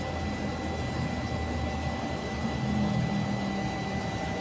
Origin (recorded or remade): recorded